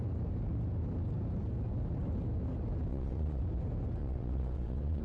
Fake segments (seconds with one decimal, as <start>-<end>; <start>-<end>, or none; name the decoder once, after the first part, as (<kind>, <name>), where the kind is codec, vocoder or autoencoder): 2.9-3.4 (vocoder, Vocos); 4.0-5.0